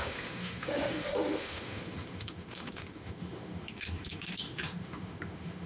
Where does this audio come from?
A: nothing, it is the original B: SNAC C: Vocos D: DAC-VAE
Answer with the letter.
D